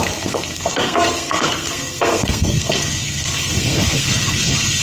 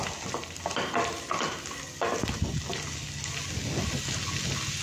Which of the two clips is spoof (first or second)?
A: first